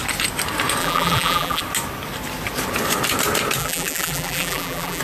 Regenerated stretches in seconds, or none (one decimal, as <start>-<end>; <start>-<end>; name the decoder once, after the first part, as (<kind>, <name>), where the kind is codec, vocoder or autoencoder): 0.8-1.6 (vocoder, BigVGAN v2); 3.6-5.0

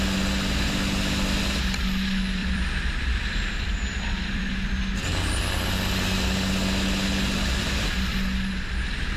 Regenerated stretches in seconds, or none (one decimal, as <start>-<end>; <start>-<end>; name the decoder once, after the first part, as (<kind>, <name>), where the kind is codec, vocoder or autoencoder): 2.4-4.4 (vocoder, BigVGAN v2); 7.8-8.5

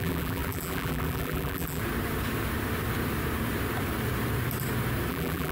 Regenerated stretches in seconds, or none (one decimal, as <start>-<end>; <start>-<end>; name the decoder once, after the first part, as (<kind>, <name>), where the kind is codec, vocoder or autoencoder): 0.0-1.8 (vocoder, BigVGAN v2); 5.1-5.5

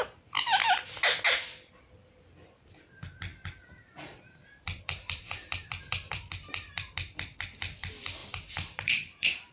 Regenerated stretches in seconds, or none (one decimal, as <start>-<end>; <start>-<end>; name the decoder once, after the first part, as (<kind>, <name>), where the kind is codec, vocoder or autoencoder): 3.3-6.8 (vocoder, BigVGAN v2); 8.2-9.5